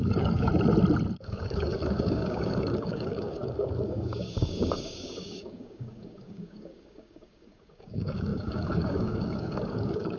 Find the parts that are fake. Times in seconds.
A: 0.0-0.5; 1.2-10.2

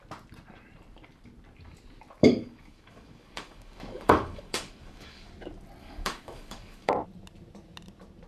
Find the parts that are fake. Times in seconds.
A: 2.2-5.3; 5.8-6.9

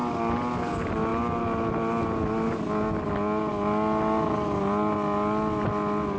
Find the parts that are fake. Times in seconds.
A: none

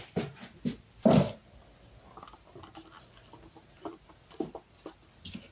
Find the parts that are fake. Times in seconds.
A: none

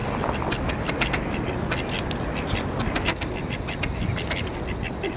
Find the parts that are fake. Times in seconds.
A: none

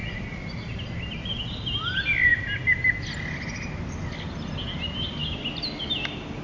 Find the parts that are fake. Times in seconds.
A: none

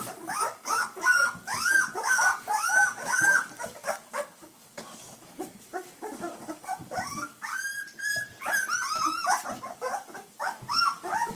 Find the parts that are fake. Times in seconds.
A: 0.0-7.5; 9.7-11.3

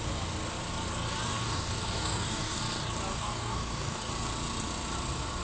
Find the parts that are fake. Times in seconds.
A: 1.3-2.6; 3.1-4.1